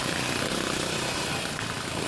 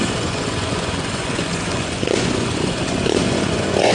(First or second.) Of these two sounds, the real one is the first